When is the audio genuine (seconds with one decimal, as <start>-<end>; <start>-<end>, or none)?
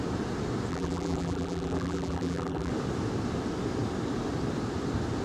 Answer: 0.0-0.7; 2.7-5.2